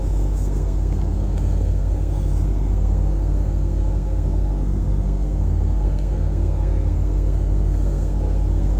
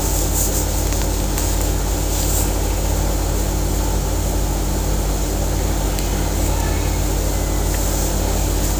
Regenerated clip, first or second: first